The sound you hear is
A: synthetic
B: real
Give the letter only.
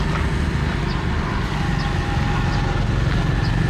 B